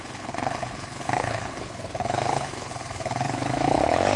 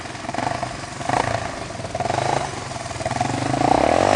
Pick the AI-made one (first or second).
first